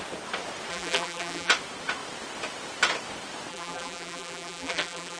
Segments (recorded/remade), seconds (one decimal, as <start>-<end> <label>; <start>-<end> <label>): 0.0-0.7 recorded; 0.7-1.5 remade; 1.5-3.5 recorded; 3.5-5.2 remade